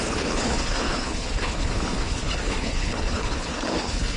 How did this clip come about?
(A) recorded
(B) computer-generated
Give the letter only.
B